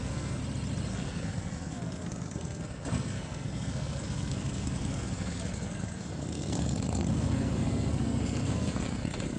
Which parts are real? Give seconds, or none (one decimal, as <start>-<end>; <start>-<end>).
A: 0.4-0.9